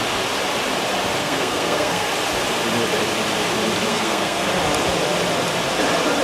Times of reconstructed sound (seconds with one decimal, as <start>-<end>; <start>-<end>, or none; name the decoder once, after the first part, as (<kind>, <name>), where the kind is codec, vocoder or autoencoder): 1.2-2.1 (codec, SNAC); 3.9-4.5